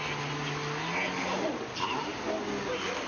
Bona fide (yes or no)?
yes